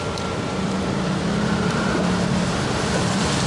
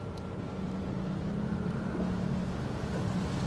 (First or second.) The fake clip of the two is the first